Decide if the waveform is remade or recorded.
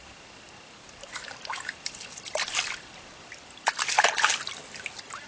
recorded